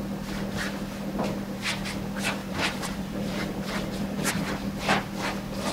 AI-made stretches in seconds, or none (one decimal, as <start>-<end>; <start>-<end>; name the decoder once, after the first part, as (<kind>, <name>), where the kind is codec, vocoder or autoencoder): 2.4-4.3 (vocoder, BigVGAN v2)

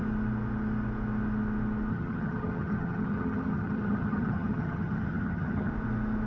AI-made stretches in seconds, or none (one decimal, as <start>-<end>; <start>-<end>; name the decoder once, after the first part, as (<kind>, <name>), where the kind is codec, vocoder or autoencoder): 1.9-5.7 (vocoder, HiFi-GAN)